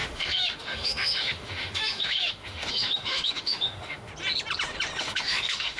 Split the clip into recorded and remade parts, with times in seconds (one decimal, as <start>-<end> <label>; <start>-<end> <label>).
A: 0.0-4.1 remade; 4.1-5.0 recorded; 5.0-5.8 remade